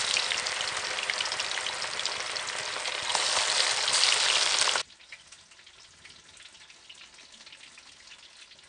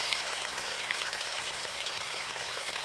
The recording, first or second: first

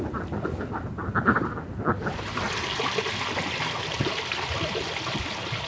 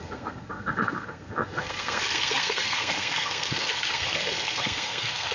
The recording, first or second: first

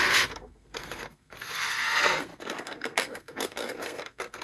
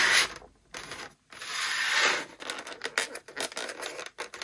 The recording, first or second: second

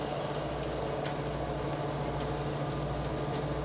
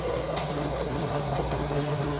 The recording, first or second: first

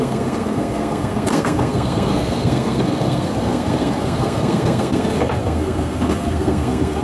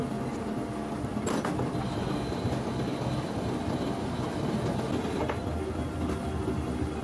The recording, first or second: second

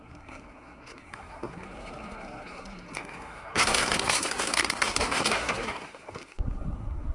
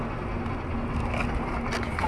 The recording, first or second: second